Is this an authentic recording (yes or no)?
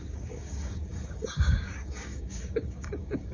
no